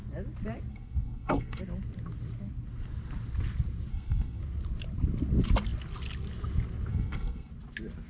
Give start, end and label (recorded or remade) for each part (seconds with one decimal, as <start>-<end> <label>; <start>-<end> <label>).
0.0-0.7 recorded; 0.7-1.6 remade; 1.6-3.9 recorded; 3.9-4.4 remade; 4.4-6.9 recorded; 6.9-7.5 remade; 7.5-8.1 recorded